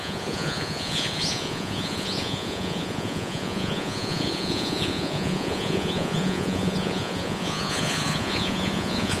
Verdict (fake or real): fake